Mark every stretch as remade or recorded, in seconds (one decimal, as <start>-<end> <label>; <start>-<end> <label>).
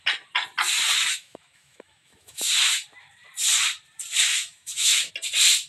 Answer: 0.0-1.1 recorded; 1.1-2.5 remade; 2.5-4.3 recorded; 4.3-5.1 remade; 5.1-5.7 recorded